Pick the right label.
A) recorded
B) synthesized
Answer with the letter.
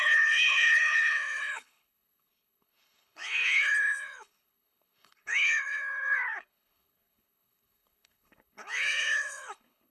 B